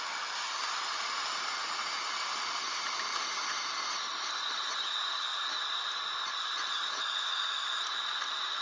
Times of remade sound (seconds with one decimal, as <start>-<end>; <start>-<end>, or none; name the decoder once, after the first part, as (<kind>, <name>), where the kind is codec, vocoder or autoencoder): none